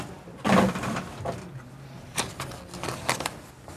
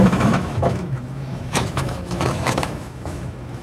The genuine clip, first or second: first